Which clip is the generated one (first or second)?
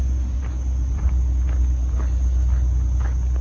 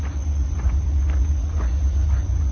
second